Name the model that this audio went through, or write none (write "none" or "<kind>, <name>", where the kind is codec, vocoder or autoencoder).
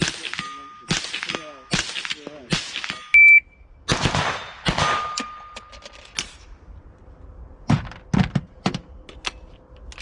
none